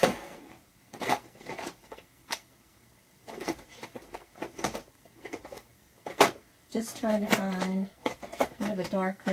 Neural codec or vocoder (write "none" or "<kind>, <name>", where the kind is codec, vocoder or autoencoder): codec, SNAC